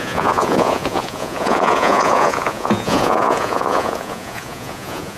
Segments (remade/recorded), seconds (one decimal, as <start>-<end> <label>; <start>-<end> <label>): 0.0-5.2 remade